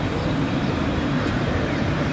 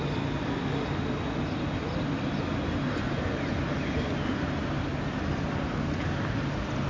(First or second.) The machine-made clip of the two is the first